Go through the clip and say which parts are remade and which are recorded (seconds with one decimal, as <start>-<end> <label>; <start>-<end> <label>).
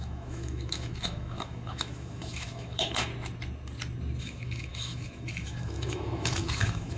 0.0-3.1 remade; 3.1-4.2 recorded; 4.2-7.0 remade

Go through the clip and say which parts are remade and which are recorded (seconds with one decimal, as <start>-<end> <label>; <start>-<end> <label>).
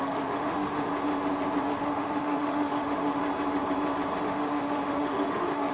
0.0-0.9 remade; 0.9-1.6 recorded; 1.6-3.2 remade; 3.2-4.2 recorded; 4.2-5.7 remade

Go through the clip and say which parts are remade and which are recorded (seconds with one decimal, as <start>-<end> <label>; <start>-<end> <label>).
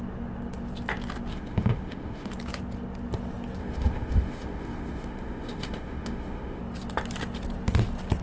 0.0-1.3 recorded; 1.3-2.3 remade; 2.3-3.6 recorded; 3.6-6.6 remade; 6.6-8.2 recorded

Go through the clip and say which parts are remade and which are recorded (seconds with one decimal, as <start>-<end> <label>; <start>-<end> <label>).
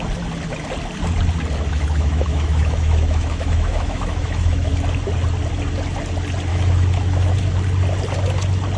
0.0-1.7 recorded; 1.7-4.7 remade; 4.7-6.5 recorded; 6.5-7.4 remade; 7.4-8.8 recorded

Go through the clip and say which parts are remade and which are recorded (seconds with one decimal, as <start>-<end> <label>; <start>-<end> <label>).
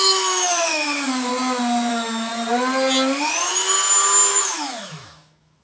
0.0-1.3 remade; 1.3-1.9 recorded; 1.9-2.3 remade; 2.3-4.3 recorded; 4.3-5.6 remade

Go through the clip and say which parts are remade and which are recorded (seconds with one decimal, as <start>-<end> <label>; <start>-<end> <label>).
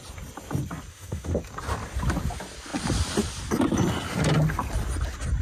0.0-0.9 recorded; 0.9-1.4 remade; 1.4-5.4 recorded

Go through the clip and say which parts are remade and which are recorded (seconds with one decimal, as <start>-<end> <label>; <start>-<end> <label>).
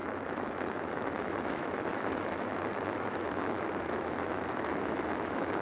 0.0-5.6 remade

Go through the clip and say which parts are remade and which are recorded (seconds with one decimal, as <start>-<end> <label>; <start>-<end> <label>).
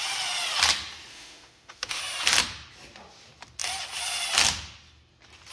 0.0-1.1 recorded; 1.1-2.0 remade; 2.0-5.5 recorded